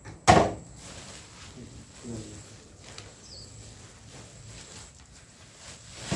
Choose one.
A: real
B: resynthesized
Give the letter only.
A